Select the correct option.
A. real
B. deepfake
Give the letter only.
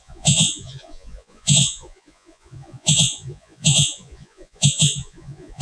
B